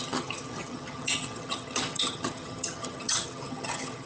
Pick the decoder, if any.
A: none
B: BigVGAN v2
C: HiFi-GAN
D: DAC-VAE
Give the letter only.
C